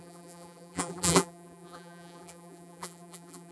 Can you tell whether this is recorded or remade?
remade